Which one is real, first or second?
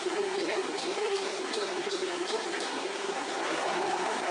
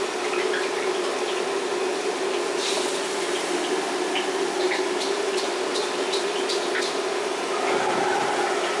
second